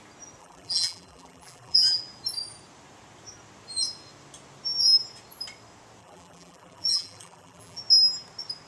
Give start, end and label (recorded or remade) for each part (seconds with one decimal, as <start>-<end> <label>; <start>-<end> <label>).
0.0-0.4 recorded; 0.4-2.0 remade; 2.0-6.0 recorded; 6.0-7.8 remade; 7.8-8.7 recorded

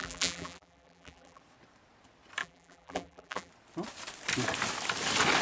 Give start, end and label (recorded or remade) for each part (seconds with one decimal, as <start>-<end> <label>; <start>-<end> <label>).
0.0-1.4 remade; 1.4-2.4 recorded; 2.4-3.5 remade; 3.5-5.4 recorded

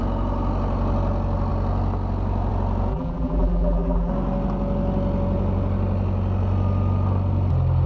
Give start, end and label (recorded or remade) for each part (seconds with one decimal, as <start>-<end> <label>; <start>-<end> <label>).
0.0-2.9 recorded; 2.9-4.1 remade; 4.1-7.9 recorded

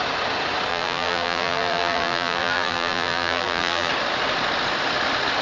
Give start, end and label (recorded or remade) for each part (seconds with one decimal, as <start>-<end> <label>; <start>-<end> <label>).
0.0-0.7 recorded; 0.7-3.9 remade; 3.9-5.4 recorded

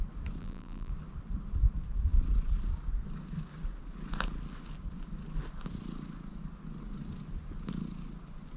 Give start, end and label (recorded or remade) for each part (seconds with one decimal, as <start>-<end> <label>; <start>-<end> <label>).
0.0-0.4 recorded; 0.4-0.9 remade; 0.9-8.6 recorded

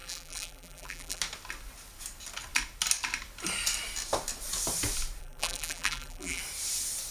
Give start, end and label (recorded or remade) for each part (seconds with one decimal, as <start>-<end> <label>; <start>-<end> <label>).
0.0-1.2 remade; 1.2-5.2 recorded; 5.2-6.4 remade; 6.4-7.1 recorded

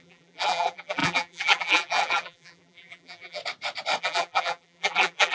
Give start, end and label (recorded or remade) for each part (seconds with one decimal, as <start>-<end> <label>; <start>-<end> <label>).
0.0-3.4 remade; 3.4-4.0 recorded; 4.0-5.3 remade